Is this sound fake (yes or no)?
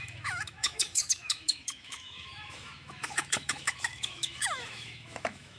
yes